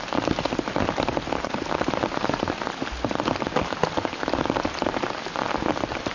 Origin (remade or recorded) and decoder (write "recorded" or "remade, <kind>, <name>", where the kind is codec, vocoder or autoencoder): recorded